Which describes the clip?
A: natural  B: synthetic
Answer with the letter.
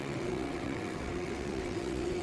B